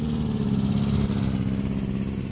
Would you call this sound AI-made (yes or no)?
no